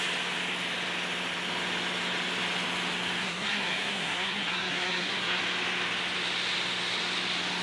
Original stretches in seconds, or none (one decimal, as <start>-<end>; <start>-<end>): 0.0-3.2; 5.4-7.6